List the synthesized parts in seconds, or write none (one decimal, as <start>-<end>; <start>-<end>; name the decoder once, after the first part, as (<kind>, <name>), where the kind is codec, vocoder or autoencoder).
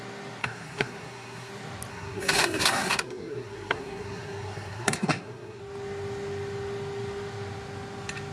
0.4-1.5 (codec, SNAC); 1.9-5.6